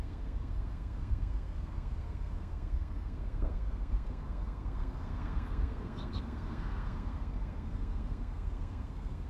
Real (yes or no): no